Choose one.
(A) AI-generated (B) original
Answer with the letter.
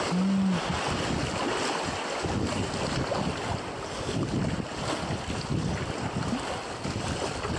B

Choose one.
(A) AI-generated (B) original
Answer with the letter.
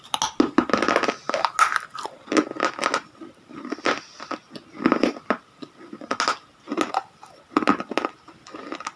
B